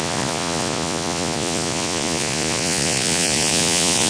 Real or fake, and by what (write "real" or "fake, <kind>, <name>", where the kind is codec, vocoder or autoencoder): fake, vocoder, Vocos